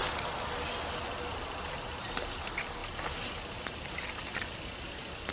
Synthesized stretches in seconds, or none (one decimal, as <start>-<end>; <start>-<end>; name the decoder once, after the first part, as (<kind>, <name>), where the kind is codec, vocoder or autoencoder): none